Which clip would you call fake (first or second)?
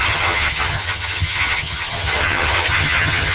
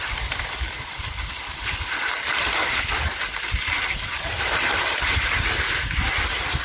first